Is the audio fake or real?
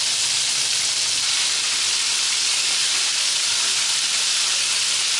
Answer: real